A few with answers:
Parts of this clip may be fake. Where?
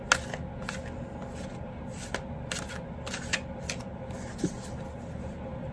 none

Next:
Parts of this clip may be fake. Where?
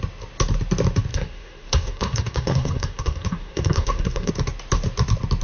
1.1-4.3